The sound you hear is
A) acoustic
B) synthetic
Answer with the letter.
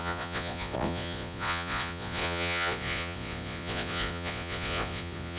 B